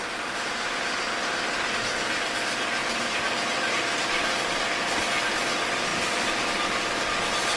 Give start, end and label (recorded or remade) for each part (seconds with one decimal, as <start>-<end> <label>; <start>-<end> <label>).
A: 0.0-2.8 recorded; 2.8-5.3 remade; 5.3-7.6 recorded

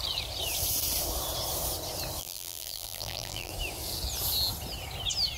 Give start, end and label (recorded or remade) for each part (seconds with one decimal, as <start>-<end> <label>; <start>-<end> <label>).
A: 0.0-2.2 recorded; 2.2-3.5 remade; 3.5-5.4 recorded

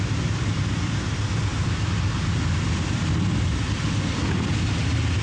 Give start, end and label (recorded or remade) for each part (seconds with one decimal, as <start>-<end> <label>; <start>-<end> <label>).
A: 0.0-5.2 recorded

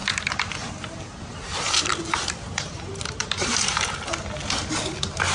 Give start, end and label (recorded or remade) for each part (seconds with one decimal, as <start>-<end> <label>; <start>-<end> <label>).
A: 0.0-2.0 remade; 2.0-2.7 recorded; 2.7-4.1 remade; 4.1-5.3 recorded